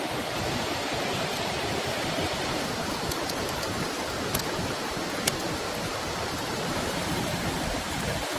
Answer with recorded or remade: remade